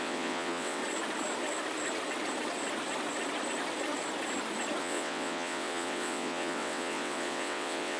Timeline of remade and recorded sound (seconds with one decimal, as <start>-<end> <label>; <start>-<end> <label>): 0.0-0.8 remade; 0.8-4.8 recorded; 4.8-8.0 remade